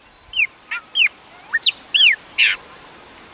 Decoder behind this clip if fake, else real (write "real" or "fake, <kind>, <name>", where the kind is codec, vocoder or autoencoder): real